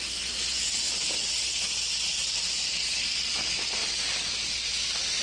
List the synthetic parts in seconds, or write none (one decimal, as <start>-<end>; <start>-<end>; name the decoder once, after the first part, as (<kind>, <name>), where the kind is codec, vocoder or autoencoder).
none